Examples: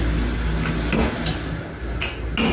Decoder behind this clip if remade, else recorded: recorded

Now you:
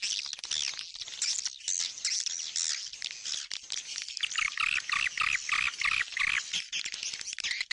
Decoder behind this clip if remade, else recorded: recorded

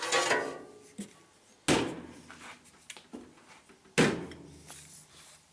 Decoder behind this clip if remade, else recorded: recorded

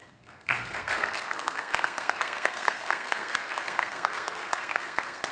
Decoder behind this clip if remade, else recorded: remade, codec, SNAC